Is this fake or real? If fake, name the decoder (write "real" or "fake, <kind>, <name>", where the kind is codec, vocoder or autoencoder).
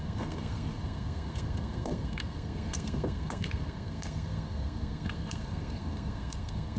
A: fake, codec, SNAC